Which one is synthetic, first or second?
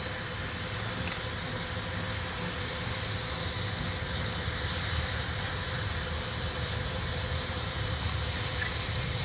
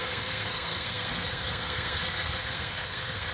second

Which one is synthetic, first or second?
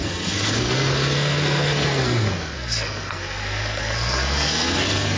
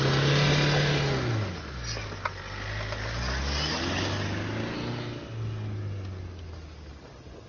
first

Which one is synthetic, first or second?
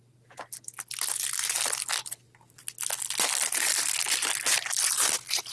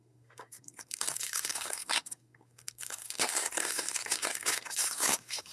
second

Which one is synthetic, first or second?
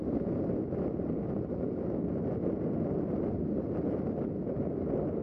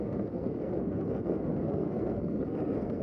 second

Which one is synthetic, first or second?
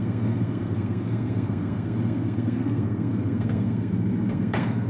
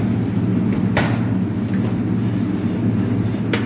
first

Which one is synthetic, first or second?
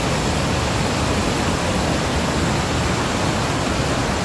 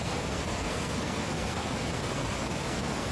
second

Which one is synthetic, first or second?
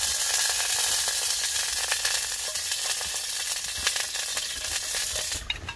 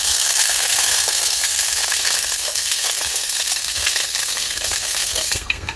second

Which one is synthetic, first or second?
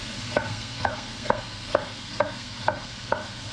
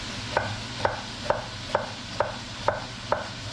first